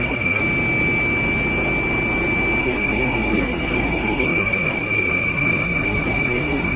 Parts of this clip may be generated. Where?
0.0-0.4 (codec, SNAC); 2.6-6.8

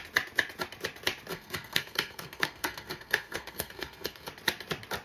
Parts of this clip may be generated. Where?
1.3-4.3 (codec, SNAC)

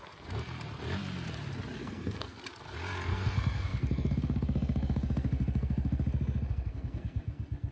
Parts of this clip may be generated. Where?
1.8-2.4 (codec, SNAC); 3.1-7.7

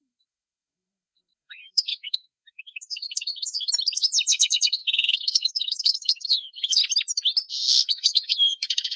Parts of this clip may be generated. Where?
0.0-3.7 (codec, SNAC); 4.3-6.8; 7.5-9.0

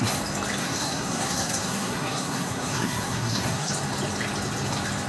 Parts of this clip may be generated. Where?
0.6-3.7 (codec, SNAC)

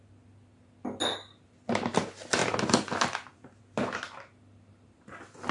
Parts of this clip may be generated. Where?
none

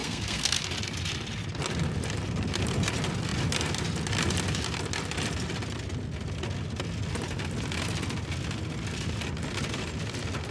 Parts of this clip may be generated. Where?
0.0-0.6 (codec, SNAC)